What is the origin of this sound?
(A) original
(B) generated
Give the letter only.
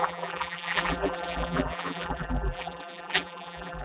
B